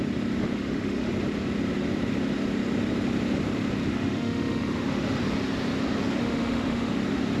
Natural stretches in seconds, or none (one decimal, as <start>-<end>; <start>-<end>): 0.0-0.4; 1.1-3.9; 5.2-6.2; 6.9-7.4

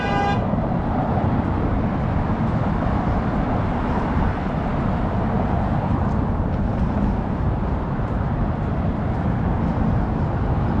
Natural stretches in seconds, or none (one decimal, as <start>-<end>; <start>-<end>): 0.0-10.8

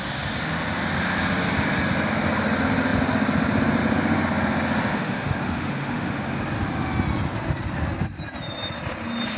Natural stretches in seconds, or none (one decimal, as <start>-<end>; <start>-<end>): 0.0-4.9; 6.4-9.4

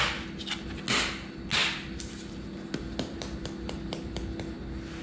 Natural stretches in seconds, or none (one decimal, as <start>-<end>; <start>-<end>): 0.0-5.0

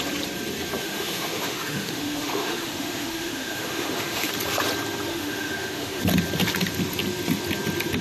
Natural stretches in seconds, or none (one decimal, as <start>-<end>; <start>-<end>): 0.0-0.8; 4.3-5.1; 6.0-8.0

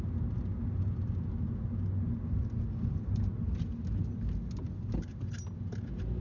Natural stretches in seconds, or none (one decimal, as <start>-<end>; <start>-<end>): 0.0-6.2